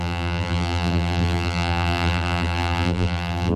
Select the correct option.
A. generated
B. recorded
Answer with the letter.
A